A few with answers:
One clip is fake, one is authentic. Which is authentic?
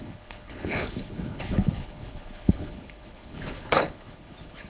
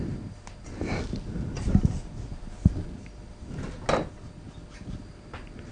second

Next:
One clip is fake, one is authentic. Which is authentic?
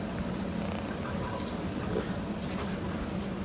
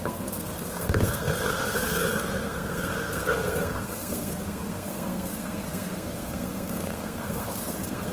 first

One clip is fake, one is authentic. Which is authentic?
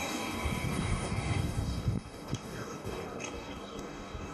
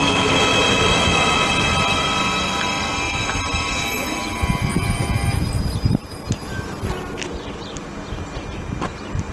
second